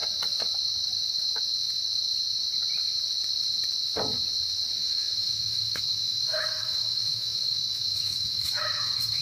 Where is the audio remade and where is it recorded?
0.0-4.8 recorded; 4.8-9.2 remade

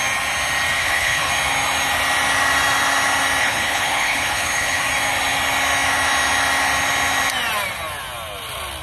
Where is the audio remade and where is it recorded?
0.0-0.8 recorded; 0.8-1.3 remade; 1.3-3.4 recorded; 3.4-4.8 remade; 4.8-8.8 recorded

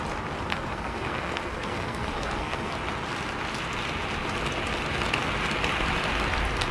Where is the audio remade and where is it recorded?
0.0-0.5 recorded; 0.5-2.7 remade; 2.7-6.7 recorded